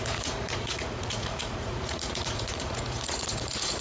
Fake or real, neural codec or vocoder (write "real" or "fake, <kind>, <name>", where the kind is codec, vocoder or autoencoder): fake, vocoder, Vocos